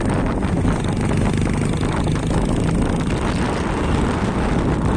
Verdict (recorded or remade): recorded